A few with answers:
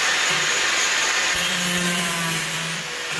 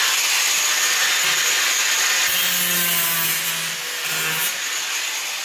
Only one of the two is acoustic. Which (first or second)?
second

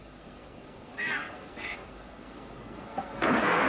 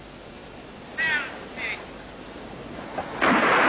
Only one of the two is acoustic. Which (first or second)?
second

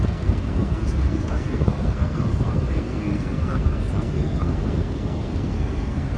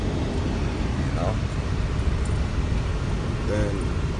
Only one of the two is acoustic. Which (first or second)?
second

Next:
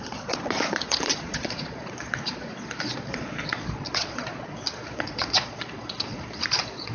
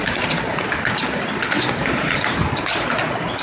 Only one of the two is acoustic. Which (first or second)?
second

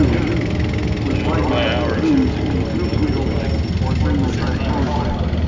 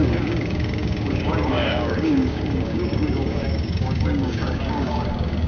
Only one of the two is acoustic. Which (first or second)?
first